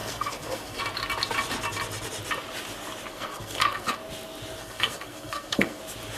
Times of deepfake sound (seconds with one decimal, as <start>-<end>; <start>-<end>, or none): 0.0-0.8; 3.1-4.0; 4.6-5.8